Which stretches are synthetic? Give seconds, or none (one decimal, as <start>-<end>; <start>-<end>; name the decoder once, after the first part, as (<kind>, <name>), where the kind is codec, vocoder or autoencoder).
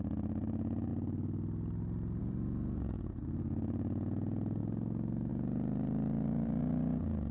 0.0-0.9 (vocoder, Vocos); 2.2-4.6; 5.3-7.3